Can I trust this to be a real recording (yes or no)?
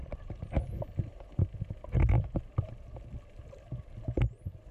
yes